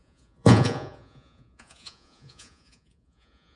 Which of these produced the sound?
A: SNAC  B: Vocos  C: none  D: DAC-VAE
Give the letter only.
B